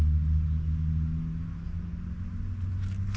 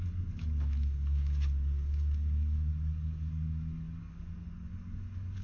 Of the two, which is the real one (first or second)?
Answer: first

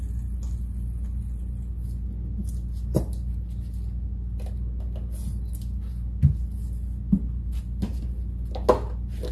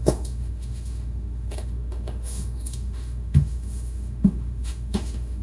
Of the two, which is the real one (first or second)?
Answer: first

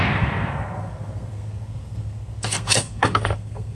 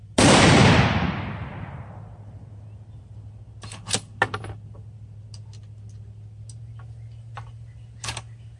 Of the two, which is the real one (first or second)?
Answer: second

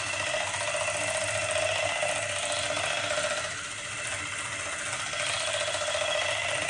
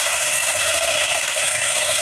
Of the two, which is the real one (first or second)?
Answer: first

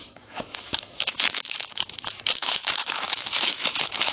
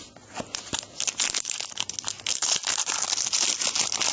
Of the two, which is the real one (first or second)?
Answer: second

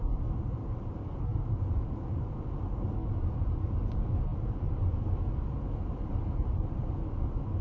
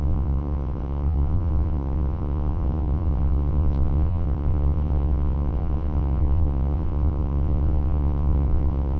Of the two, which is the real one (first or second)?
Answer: first